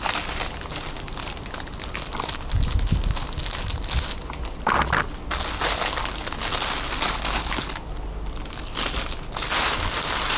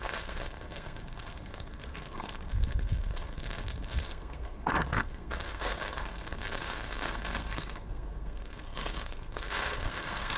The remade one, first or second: second